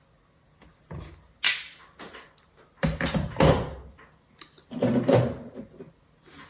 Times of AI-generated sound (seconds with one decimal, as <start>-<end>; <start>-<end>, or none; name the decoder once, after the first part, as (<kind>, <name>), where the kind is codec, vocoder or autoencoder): none